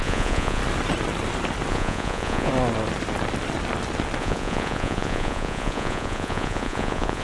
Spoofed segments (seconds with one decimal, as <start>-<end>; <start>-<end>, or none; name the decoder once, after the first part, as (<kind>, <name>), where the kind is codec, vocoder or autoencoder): 0.0-0.6 (vocoder, Vocos); 1.7-2.5; 4.2-7.2